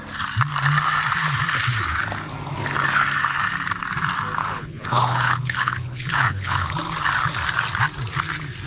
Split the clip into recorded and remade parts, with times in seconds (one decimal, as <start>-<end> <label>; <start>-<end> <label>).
0.0-4.4 recorded; 4.4-6.7 remade; 6.7-8.7 recorded